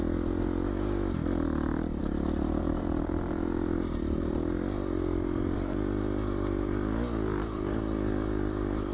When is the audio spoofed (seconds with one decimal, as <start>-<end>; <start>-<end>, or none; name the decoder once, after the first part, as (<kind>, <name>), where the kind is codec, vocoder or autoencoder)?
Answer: 2.0-4.2 (vocoder, BigVGAN v2)

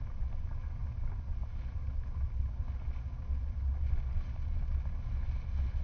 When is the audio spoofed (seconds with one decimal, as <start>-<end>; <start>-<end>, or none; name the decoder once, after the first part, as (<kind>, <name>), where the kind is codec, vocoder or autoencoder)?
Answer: none